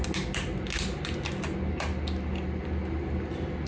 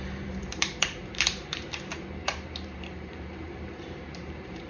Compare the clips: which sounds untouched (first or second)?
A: first